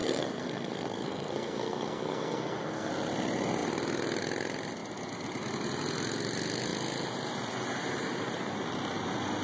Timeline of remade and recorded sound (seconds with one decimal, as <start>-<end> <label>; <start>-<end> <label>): 0.0-2.9 remade; 2.9-9.4 recorded